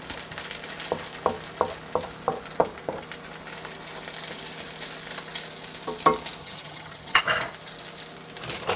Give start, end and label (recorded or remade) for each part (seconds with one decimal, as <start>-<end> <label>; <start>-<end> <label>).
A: 0.0-6.4 recorded; 6.4-7.2 remade; 7.2-8.8 recorded